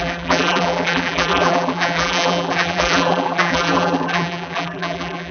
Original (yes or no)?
no